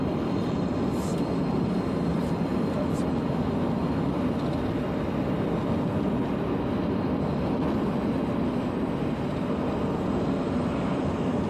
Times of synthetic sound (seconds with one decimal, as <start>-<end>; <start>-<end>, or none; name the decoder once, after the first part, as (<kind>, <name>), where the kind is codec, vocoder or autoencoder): none

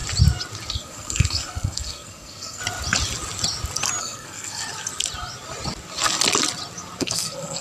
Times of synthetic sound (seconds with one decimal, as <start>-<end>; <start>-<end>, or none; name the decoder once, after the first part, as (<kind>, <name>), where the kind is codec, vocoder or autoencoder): 0.7-2.6 (codec, SNAC); 4.0-4.6; 7.0-7.6

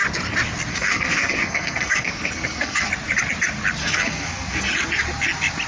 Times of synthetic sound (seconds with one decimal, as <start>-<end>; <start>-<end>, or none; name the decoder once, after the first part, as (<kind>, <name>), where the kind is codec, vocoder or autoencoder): 0.7-2.9 (codec, SNAC); 3.8-4.7

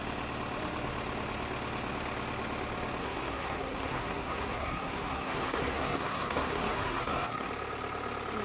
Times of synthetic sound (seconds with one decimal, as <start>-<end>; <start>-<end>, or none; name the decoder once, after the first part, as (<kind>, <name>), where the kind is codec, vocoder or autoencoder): 3.0-7.5 (codec, SNAC)

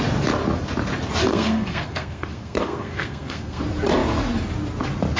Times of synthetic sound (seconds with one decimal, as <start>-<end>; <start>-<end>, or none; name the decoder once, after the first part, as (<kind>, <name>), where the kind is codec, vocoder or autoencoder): 1.3-3.6 (codec, SNAC)